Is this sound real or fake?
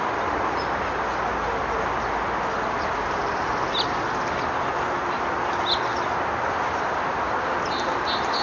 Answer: real